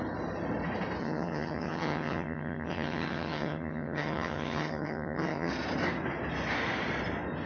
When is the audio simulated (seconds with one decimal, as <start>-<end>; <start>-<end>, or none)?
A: 1.0-5.5